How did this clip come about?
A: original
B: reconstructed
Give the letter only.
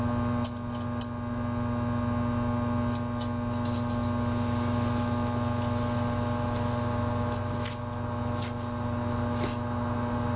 A